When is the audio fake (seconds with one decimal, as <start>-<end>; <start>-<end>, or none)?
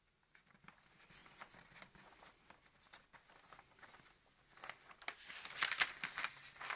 none